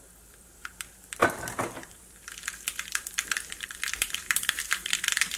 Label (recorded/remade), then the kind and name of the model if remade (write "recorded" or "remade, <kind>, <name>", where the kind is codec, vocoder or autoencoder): remade, vocoder, BigVGAN v2